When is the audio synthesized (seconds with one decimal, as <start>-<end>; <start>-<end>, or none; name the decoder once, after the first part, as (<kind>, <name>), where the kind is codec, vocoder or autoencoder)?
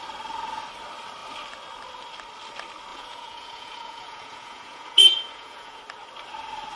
2.9-5.8 (vocoder, Vocos)